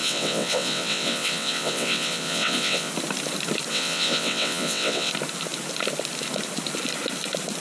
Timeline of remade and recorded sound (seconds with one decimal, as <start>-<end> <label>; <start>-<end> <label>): 0.0-2.9 remade; 2.9-3.7 recorded; 3.7-5.1 remade; 5.1-7.6 recorded